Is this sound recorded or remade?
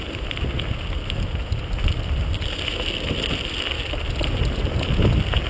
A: recorded